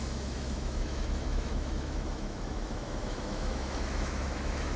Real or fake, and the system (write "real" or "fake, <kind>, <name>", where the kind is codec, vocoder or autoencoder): fake, autoencoder, DAC-VAE